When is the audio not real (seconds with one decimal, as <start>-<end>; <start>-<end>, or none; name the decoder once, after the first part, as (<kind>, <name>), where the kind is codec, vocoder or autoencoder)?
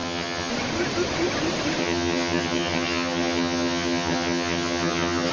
0.0-0.5 (vocoder, HiFi-GAN); 1.8-5.3